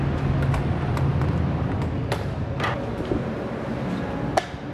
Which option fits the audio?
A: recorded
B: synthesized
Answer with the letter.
A